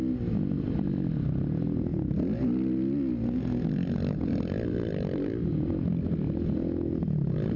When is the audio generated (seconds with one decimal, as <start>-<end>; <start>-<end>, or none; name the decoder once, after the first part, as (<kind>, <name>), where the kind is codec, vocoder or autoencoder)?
none